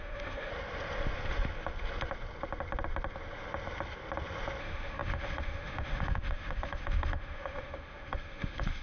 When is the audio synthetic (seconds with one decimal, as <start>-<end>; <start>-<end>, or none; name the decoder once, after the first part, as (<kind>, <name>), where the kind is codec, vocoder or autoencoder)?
0.0-0.5 (autoencoder, DAC-VAE); 4.6-8.8